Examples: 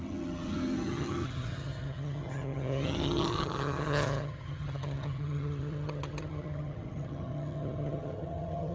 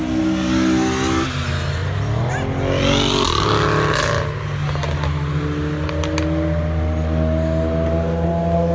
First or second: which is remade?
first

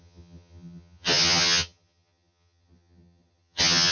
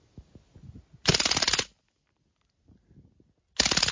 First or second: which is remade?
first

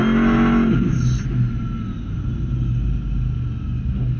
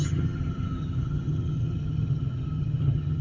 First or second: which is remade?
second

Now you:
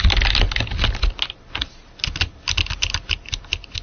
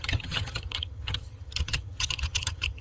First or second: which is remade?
second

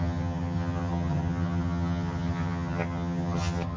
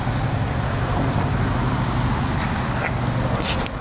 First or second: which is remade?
first